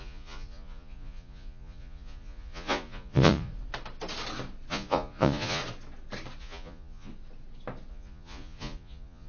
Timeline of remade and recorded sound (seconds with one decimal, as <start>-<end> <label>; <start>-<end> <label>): 0.0-3.5 remade; 3.5-4.7 recorded; 4.7-5.6 remade; 5.6-6.4 recorded; 6.4-7.1 remade; 7.1-7.9 recorded; 7.9-9.3 remade